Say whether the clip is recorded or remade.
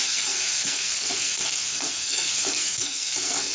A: remade